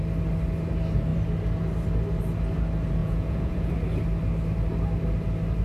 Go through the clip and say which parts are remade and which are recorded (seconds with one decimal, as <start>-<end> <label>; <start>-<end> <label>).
0.0-3.0 recorded; 3.0-3.7 remade; 3.7-5.6 recorded